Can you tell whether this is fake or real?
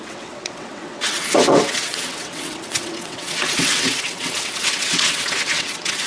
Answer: fake